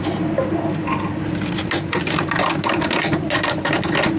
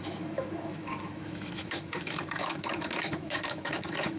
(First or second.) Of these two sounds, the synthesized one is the second